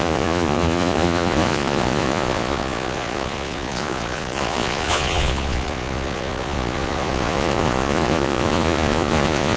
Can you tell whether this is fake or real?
fake